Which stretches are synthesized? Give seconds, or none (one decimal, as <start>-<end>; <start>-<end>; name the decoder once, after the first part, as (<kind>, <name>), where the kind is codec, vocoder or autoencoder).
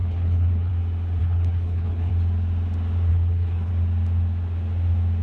0.0-0.7 (codec, HILCodec); 1.2-2.1; 3.1-3.7